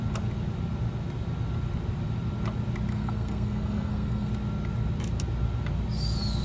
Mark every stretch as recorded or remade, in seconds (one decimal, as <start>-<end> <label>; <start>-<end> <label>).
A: 0.0-2.9 recorded; 2.9-4.3 remade; 4.3-6.4 recorded